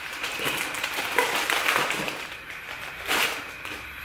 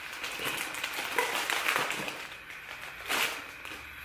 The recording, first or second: second